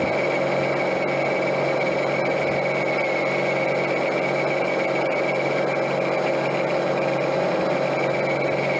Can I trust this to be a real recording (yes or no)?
yes